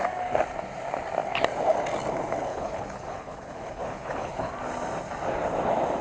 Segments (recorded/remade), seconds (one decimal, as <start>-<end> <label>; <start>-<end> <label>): 0.0-2.5 recorded; 2.5-4.5 remade; 4.5-6.0 recorded